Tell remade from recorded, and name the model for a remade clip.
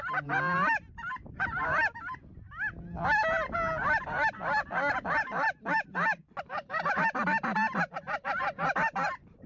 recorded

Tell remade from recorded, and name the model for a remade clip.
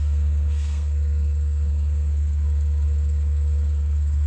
remade, codec, SNAC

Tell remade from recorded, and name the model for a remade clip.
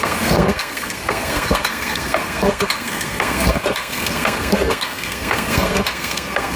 remade, codec, SNAC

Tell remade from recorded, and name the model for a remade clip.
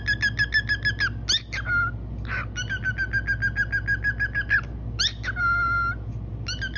recorded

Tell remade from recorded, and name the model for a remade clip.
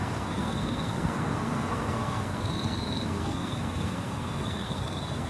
remade, codec, SNAC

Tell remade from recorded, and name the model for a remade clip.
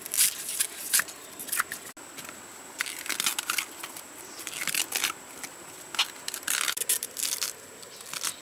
recorded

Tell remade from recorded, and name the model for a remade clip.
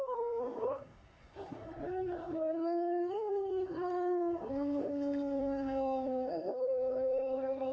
remade, codec, SNAC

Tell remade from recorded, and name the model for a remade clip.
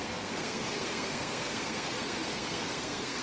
remade, codec, SNAC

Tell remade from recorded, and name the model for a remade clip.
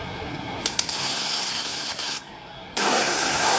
remade, codec, SNAC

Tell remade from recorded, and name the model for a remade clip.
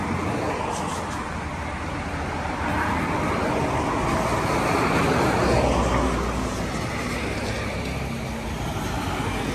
recorded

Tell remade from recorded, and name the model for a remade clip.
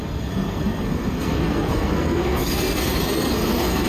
remade, codec, SNAC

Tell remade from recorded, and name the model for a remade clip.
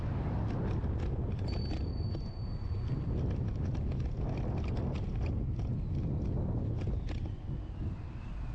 recorded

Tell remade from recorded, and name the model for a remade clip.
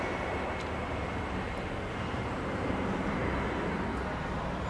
recorded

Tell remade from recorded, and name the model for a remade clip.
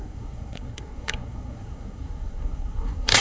remade, codec, SNAC